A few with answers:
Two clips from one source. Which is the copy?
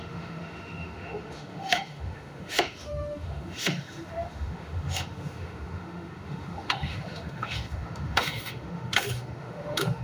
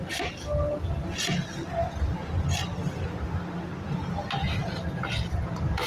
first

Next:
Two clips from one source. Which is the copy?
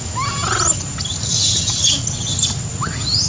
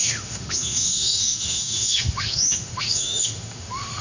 second